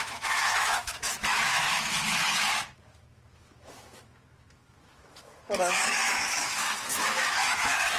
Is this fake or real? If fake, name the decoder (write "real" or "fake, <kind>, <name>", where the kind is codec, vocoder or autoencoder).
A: fake, autoencoder, DAC-VAE